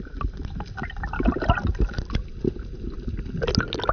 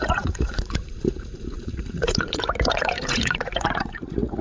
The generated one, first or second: second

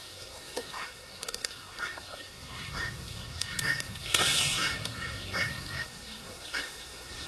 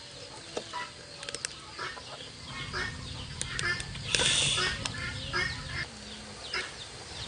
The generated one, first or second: first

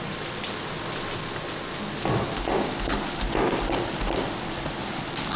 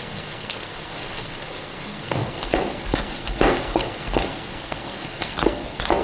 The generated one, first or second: second